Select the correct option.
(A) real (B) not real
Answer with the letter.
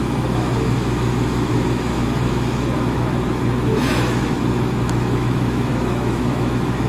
B